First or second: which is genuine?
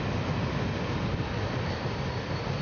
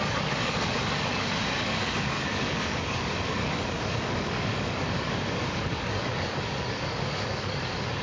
first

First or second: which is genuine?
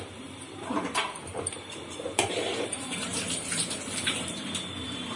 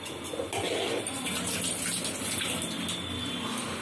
second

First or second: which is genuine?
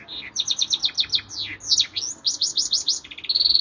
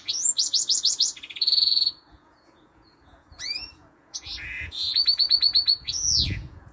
first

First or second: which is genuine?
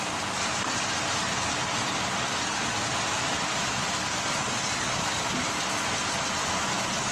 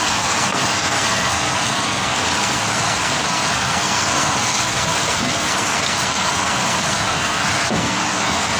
first